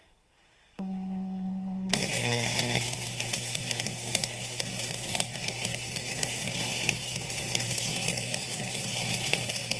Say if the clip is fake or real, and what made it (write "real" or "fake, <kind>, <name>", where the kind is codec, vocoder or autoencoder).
fake, codec, SNAC